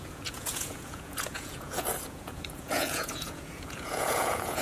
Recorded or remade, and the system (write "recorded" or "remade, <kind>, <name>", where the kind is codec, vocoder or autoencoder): remade, vocoder, Vocos